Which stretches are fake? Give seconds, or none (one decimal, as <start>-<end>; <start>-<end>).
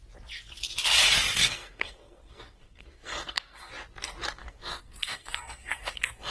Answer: 1.4-3.7; 4.4-6.3